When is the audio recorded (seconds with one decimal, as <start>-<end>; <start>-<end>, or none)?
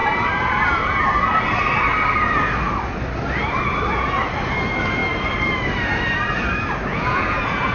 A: 0.0-6.9